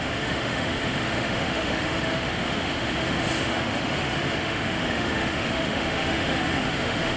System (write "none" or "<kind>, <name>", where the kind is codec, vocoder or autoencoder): autoencoder, DAC-VAE